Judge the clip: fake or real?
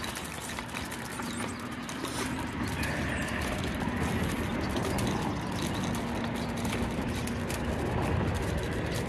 real